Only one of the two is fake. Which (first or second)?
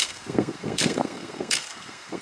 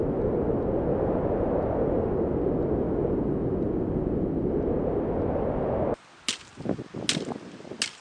first